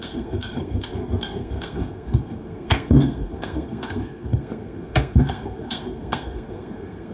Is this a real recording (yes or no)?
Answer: no